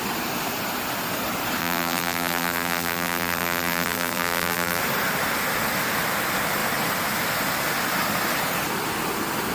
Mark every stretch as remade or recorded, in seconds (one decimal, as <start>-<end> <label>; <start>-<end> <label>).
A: 0.0-1.6 recorded; 1.6-4.8 remade; 4.8-9.5 recorded